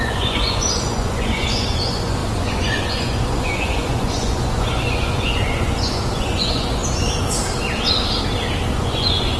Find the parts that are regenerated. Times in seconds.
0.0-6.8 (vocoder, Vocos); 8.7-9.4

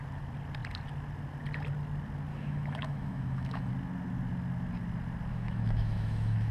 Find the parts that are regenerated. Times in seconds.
2.3-3.7 (autoencoder, DAC-VAE); 5.3-6.5

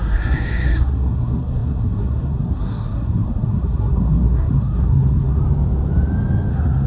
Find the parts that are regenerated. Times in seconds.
0.0-5.4 (codec, SNAC); 6.5-6.9

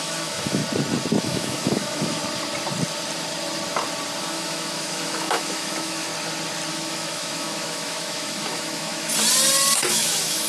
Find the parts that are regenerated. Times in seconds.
0.0-0.6 (autoencoder, DAC-VAE); 1.2-2.2; 4.2-6.1; 6.7-9.1; 9.9-10.5

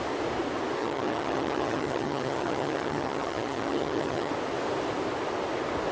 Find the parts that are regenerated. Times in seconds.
0.8-4.3 (vocoder, HiFi-GAN)